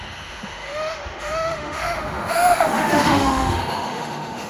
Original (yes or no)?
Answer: no